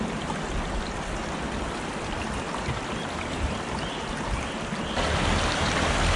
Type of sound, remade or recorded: recorded